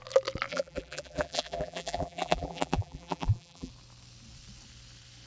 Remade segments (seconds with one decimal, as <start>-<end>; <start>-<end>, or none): 0.5-3.7